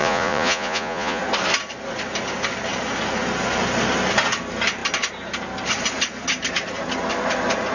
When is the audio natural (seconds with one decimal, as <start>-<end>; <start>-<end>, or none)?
1.2-7.7